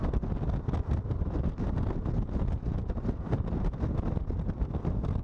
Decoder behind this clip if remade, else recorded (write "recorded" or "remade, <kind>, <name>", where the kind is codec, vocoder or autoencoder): recorded